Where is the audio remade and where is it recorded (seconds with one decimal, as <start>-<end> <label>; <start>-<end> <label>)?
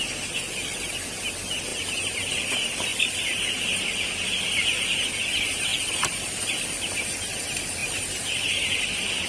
0.0-1.7 recorded; 1.7-2.5 remade; 2.5-5.7 recorded; 5.7-6.4 remade; 6.4-7.8 recorded; 7.8-8.8 remade; 8.8-9.3 recorded